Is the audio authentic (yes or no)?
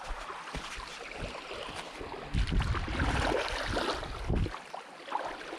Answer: yes